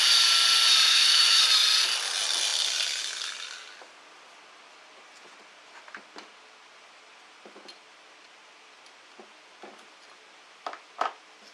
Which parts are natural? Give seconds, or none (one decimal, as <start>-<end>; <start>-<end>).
0.0-0.9; 1.4-11.5